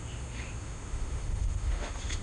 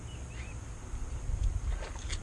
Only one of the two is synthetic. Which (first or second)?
first